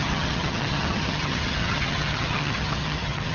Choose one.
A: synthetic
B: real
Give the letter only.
A